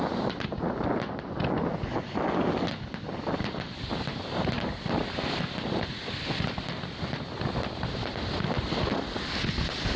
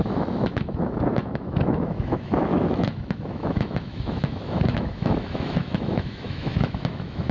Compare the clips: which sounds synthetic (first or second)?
second